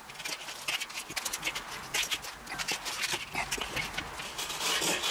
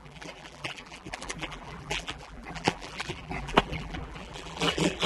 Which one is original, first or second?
first